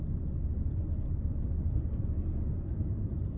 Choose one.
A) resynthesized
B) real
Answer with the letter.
A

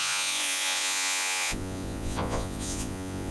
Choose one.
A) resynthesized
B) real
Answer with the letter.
A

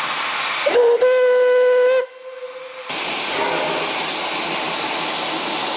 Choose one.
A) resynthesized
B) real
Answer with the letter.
B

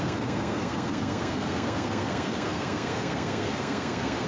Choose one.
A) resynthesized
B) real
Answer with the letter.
A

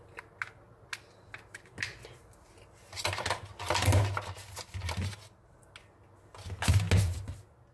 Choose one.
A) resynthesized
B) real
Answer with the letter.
B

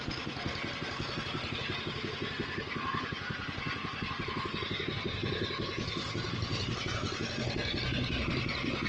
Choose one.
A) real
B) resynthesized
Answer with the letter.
A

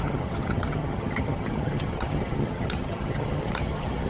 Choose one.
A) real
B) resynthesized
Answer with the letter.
B